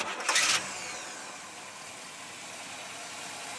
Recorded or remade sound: recorded